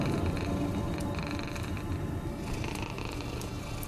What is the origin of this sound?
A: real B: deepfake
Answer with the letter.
A